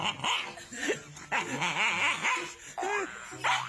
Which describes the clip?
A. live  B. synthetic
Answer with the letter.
A